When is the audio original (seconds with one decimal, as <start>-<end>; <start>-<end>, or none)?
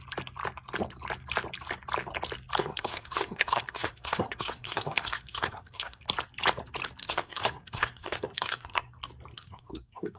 0.0-2.6; 6.0-7.0; 8.9-9.3